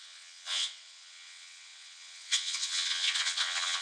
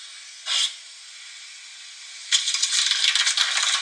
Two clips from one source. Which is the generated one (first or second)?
first